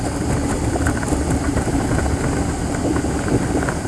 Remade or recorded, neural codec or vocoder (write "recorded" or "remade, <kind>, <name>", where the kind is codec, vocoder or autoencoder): recorded